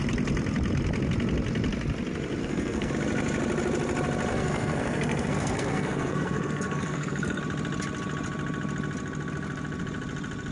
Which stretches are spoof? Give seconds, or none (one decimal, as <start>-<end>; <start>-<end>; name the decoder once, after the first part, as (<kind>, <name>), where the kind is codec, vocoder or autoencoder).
2.4-2.9 (codec, SNAC); 4.3-7.4